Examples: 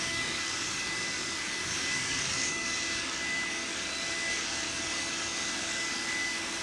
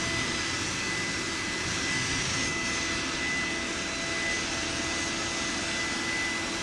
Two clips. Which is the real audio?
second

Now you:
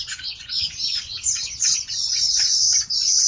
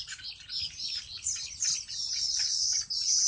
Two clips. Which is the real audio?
second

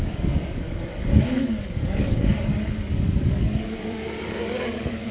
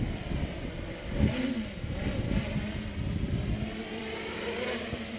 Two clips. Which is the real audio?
second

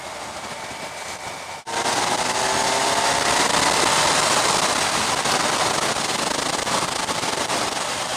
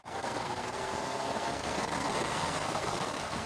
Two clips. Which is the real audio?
first